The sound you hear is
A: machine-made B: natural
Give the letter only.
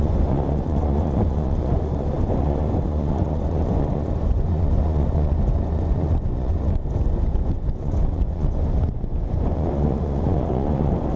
A